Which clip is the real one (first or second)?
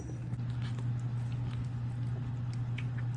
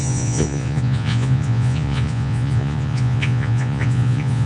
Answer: first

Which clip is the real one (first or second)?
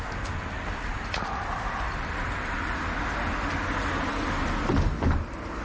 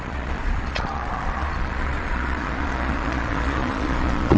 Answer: first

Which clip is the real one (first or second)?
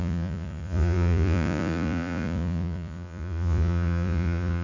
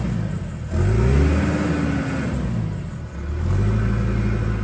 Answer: second